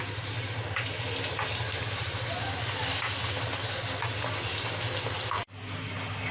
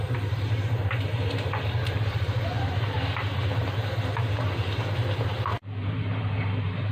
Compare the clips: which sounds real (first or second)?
first